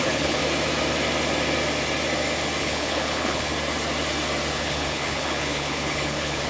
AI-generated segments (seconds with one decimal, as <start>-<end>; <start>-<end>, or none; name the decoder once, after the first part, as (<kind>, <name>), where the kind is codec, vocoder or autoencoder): 0.0-0.4 (codec, HILCodec); 2.6-3.5; 4.5-6.5